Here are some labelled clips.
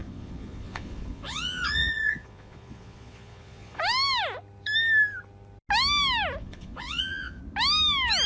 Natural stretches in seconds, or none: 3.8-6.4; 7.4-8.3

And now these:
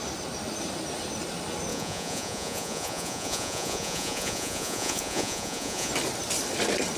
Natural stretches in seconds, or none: 0.0-1.7; 5.9-7.0

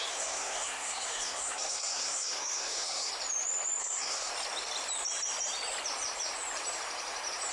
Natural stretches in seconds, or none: 3.1-3.8; 4.3-7.5

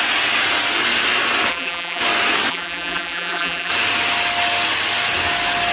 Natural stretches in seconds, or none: 0.0-1.5; 2.0-2.5; 3.7-5.7